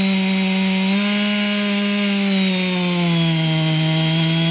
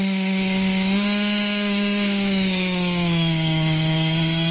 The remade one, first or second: second